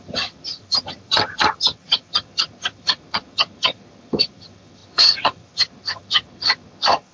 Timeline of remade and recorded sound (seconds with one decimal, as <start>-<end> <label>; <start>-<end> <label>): 0.0-7.1 remade